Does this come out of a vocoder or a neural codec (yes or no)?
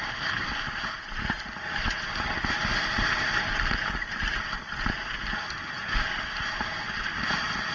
no